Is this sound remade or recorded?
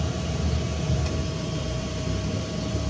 remade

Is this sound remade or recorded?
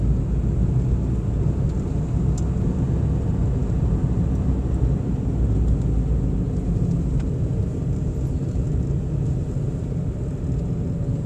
recorded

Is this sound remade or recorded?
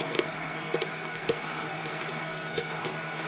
remade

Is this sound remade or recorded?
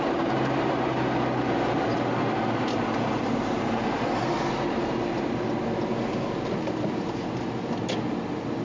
recorded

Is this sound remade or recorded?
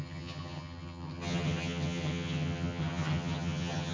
remade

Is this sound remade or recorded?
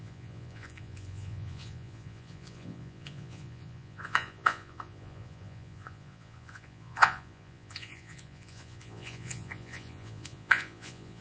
remade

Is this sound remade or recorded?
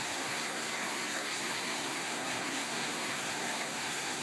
remade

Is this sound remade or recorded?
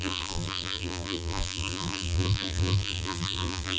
remade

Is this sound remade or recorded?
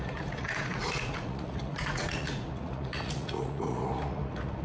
remade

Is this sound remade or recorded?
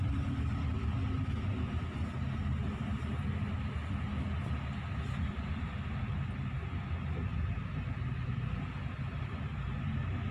recorded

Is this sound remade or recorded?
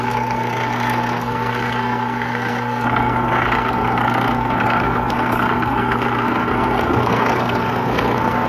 remade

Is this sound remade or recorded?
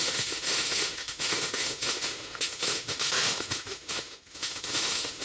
remade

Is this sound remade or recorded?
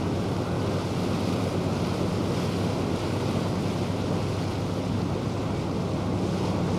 recorded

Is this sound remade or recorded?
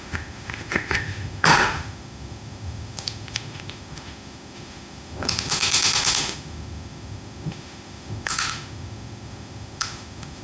remade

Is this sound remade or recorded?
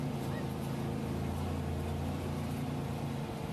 recorded